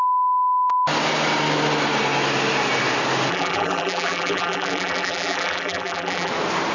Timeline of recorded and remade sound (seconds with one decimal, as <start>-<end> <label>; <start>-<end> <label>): 0.0-3.3 recorded; 3.3-6.3 remade; 6.3-6.7 recorded